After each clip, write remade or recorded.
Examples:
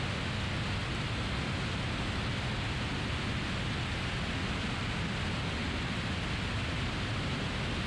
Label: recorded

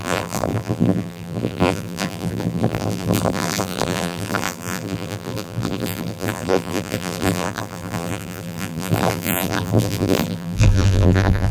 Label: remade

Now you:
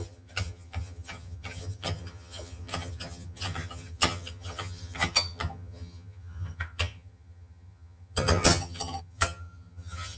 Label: remade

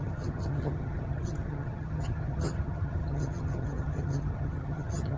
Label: remade